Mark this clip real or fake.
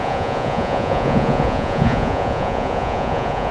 fake